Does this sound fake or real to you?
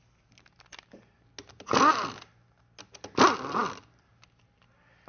real